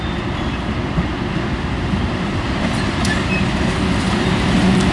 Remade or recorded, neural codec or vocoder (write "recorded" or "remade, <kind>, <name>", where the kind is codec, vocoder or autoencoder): recorded